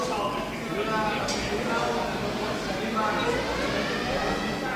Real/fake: real